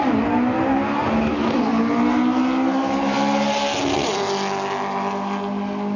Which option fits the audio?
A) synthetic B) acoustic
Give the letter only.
B